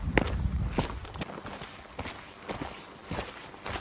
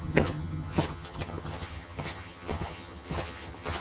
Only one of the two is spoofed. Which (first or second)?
second